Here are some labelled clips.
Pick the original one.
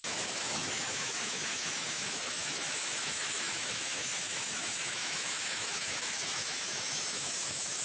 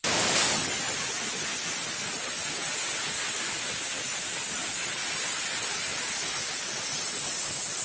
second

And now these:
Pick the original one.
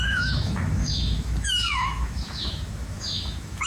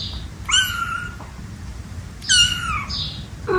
second